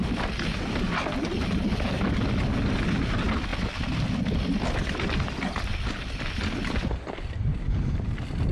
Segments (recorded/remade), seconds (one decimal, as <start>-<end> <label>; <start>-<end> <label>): 0.0-8.5 recorded